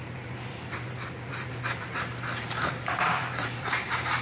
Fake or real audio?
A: fake